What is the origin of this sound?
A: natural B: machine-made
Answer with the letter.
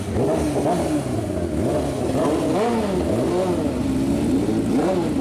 A